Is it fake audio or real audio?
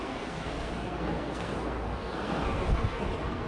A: fake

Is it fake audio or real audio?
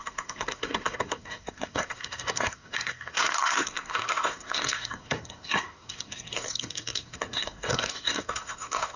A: fake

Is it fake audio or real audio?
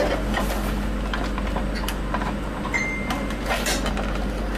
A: real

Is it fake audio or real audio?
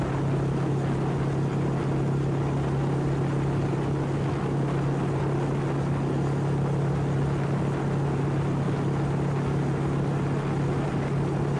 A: real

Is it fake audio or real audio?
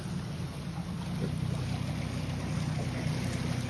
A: real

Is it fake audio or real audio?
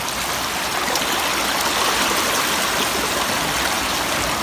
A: real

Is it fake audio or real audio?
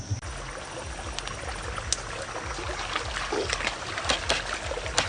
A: real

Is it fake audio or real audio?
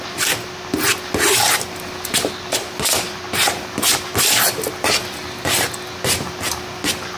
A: real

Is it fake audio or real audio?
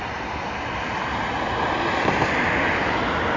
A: real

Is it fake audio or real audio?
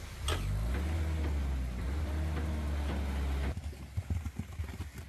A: real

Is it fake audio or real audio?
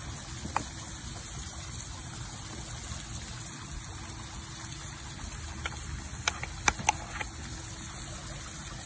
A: real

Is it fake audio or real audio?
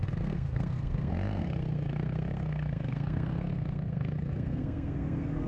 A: fake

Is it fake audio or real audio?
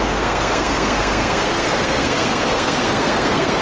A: fake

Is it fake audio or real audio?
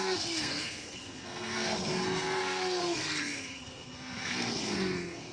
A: fake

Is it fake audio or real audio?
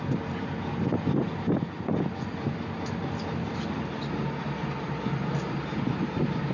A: real